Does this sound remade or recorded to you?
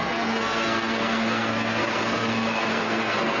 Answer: remade